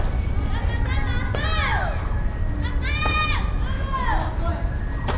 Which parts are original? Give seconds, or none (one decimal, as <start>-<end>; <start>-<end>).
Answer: 0.0-5.2